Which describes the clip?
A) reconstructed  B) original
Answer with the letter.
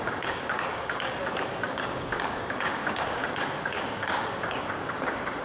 A